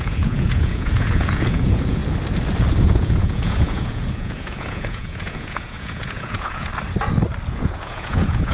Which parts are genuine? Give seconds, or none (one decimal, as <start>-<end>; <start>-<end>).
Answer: 2.0-2.8; 6.7-7.5